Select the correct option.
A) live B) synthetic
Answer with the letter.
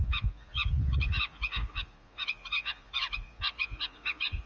B